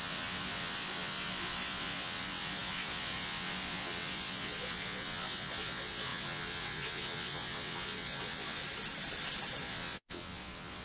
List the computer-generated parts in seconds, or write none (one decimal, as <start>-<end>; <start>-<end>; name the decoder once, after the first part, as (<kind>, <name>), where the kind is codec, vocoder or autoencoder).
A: 0.0-8.6 (vocoder, WaveNeXt); 9.6-10.8